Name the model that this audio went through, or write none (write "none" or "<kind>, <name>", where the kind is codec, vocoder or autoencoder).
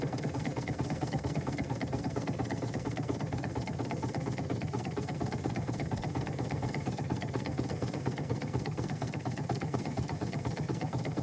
codec, SNAC